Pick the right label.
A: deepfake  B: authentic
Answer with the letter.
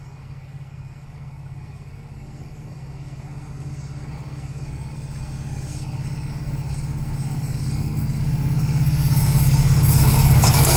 A